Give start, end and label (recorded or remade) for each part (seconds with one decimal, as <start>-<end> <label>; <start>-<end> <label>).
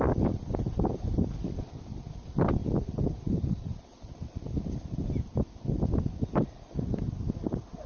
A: 0.0-7.9 recorded